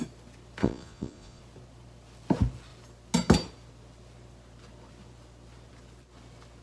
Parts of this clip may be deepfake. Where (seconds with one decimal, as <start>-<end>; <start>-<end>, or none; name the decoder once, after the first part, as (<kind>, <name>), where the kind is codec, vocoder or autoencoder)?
0.6-1.4 (vocoder, Vocos)